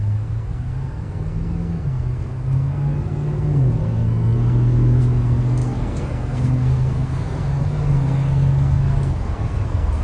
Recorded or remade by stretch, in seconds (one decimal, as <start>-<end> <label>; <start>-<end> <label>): 0.0-10.0 remade